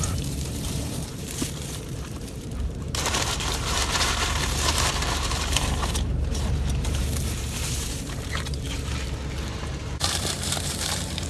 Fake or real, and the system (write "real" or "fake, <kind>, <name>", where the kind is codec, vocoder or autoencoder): fake, vocoder, BigVGAN v2